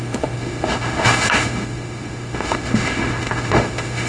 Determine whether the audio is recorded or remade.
remade